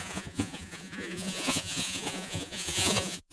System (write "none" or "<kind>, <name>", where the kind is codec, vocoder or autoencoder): vocoder, Vocos